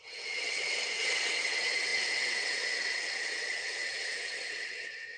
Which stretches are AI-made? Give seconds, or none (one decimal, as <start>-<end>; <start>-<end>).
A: 0.0-5.2